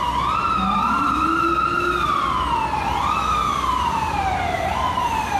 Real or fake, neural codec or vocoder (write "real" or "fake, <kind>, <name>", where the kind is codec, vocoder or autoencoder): real